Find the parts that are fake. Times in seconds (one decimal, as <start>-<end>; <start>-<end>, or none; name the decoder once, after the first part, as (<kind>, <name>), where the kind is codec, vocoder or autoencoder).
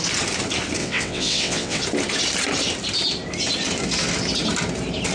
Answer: 0.8-1.8 (vocoder, WaveNeXt)